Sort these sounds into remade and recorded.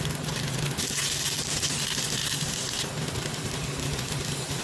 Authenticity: recorded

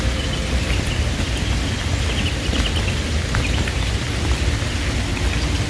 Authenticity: recorded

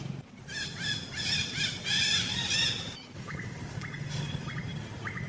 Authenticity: recorded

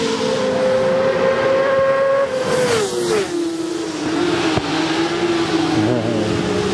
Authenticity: recorded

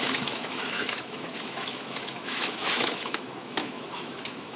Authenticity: remade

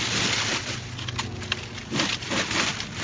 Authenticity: recorded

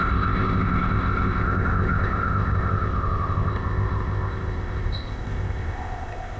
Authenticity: remade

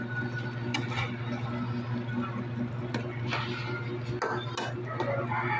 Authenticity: recorded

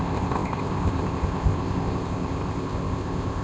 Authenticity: remade